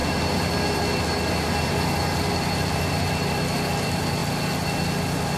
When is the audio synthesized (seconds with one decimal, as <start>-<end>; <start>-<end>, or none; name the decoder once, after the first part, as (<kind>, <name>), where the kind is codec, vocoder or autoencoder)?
none